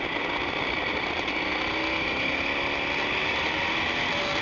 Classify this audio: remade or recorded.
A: recorded